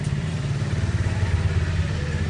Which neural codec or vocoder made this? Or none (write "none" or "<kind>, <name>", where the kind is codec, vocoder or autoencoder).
vocoder, BigVGAN v2